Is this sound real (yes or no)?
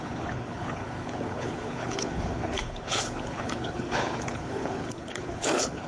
no